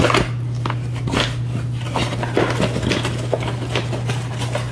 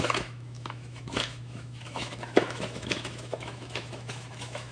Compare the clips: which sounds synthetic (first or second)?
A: second